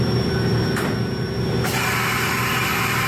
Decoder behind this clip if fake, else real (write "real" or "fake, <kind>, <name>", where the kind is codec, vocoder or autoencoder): fake, vocoder, BigVGAN v2